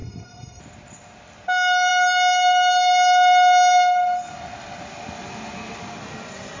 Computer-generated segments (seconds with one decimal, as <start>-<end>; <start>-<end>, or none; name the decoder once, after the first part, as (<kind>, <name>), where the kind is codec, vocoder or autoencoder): 0.0-0.6 (codec, SNAC)